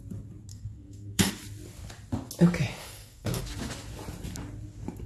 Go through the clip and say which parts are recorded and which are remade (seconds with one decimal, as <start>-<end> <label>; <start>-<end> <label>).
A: 0.0-0.5 recorded; 0.5-1.3 remade; 1.3-2.8 recorded; 2.8-3.4 remade; 3.4-5.1 recorded